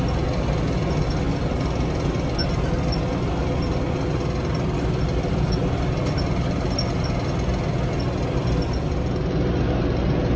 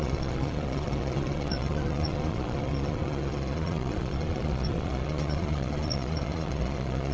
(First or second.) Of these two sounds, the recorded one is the first